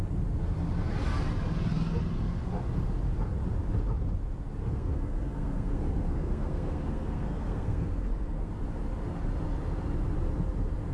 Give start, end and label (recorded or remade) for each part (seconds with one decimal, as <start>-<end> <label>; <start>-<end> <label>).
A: 0.0-4.6 recorded; 4.6-8.5 remade; 8.5-10.9 recorded